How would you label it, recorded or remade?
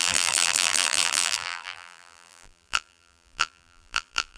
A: remade